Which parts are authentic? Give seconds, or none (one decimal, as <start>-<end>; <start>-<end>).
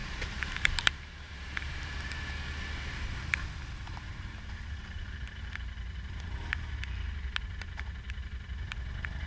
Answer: 2.3-9.3